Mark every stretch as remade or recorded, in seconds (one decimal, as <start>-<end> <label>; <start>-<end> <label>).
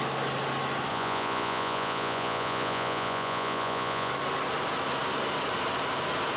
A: 0.0-0.9 recorded; 0.9-4.1 remade; 4.1-6.4 recorded